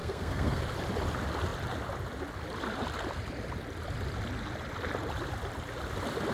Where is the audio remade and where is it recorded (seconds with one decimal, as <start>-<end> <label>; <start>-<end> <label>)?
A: 0.0-0.6 remade; 0.6-6.3 recorded